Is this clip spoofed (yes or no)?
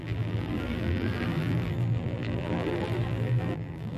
yes